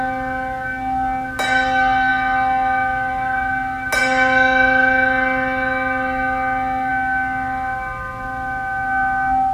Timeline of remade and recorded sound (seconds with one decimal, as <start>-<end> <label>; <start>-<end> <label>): 0.0-9.5 recorded